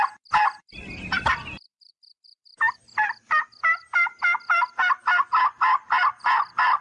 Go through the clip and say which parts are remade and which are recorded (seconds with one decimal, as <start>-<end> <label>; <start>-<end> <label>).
0.0-0.6 recorded; 0.6-2.8 remade; 2.8-6.0 recorded; 6.0-6.8 remade